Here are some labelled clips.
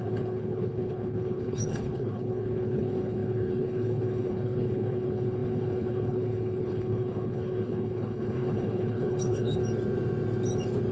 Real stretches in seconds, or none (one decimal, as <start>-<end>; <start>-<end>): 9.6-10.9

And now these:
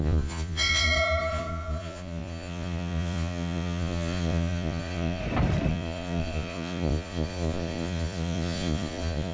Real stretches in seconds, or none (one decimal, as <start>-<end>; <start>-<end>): 5.2-5.7

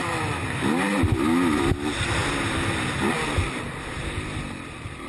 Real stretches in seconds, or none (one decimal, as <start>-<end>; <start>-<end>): 0.0-5.1